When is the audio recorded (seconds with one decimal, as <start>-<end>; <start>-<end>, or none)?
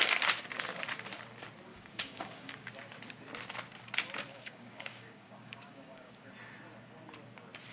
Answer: 0.0-1.7; 2.7-4.3; 6.3-7.7